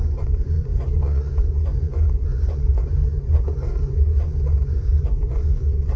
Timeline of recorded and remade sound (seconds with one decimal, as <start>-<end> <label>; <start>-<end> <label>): 0.0-6.0 remade